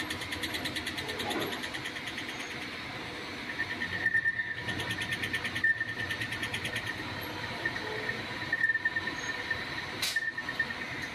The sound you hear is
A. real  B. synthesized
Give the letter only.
A